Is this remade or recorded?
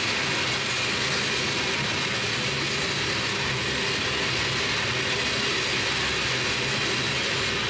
recorded